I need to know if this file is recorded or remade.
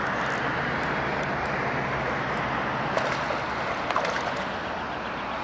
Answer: recorded